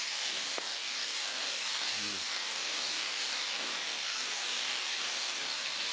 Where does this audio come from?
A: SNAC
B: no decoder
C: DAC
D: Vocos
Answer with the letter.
C